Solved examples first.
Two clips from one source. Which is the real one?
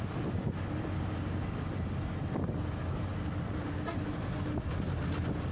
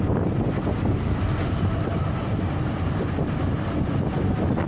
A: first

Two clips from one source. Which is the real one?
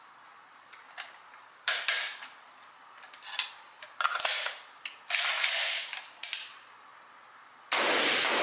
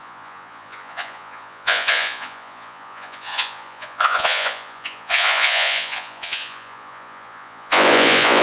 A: first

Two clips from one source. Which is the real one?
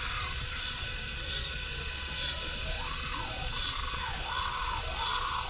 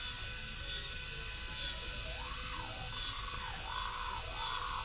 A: second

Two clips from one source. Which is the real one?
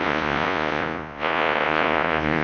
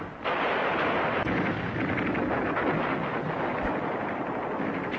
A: second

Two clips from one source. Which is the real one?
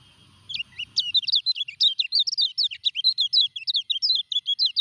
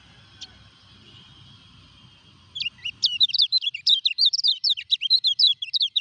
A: first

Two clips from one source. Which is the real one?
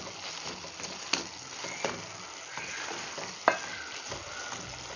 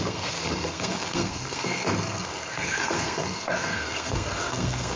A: first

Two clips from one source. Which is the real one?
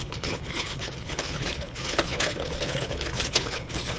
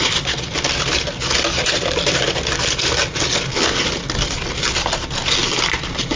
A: second